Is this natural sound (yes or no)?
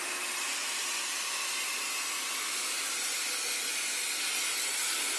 yes